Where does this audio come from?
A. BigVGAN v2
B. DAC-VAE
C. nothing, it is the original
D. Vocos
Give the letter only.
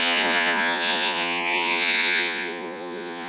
D